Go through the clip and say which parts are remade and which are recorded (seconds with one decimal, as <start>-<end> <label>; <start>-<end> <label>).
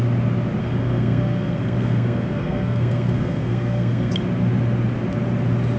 0.0-0.6 recorded; 0.6-4.1 remade; 4.1-5.8 recorded